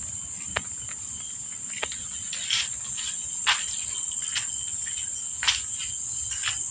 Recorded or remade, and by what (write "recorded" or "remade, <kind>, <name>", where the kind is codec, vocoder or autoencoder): recorded